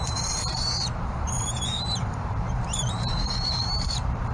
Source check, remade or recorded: remade